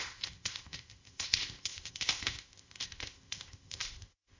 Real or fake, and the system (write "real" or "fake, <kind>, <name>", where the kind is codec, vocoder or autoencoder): fake, codec, ZipCodec